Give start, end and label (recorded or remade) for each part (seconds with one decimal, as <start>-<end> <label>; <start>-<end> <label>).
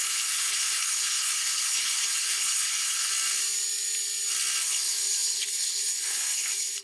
0.0-3.1 remade; 3.1-4.6 recorded; 4.6-6.8 remade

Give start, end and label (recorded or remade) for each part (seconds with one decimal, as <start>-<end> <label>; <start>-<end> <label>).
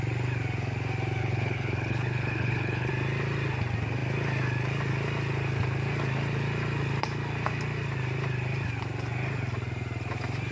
0.0-1.2 recorded; 1.2-2.9 remade; 2.9-10.5 recorded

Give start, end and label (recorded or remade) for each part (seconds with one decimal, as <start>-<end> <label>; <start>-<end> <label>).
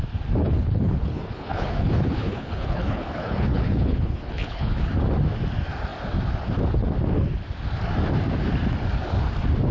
0.0-0.4 recorded; 0.4-4.9 remade; 4.9-9.7 recorded